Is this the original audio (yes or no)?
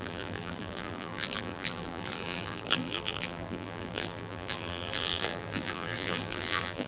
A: no